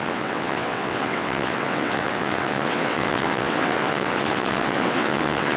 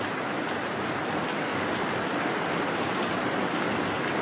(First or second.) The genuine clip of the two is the second